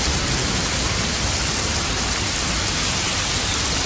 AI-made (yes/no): no